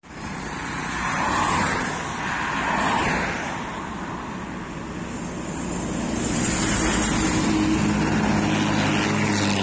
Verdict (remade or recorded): recorded